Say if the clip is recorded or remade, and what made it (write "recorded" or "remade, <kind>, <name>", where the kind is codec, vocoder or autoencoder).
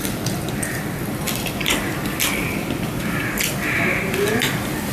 remade, vocoder, BigVGAN v2